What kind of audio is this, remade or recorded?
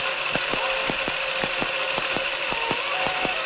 recorded